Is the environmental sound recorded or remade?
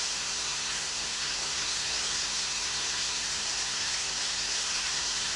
remade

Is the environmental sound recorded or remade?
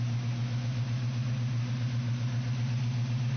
recorded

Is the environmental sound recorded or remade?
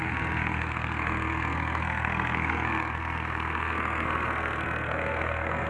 remade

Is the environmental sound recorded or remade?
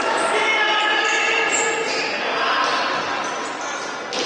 recorded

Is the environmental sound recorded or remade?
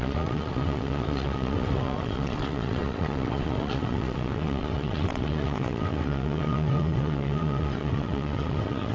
remade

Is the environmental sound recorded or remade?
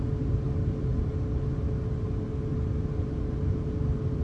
recorded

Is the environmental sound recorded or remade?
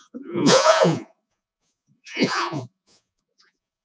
remade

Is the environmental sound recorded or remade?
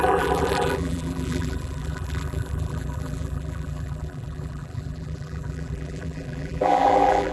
remade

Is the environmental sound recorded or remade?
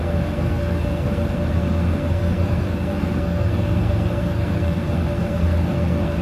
remade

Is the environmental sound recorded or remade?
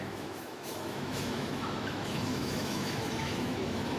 remade